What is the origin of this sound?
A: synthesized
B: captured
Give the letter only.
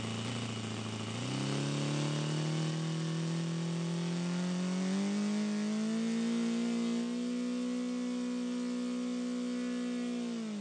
B